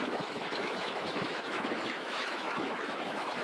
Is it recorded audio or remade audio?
remade